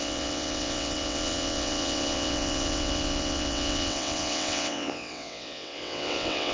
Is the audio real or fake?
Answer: fake